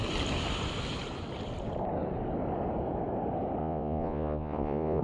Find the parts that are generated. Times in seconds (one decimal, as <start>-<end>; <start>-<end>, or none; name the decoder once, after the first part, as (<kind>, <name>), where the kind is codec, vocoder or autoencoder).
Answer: 3.6-5.0 (vocoder, Vocos)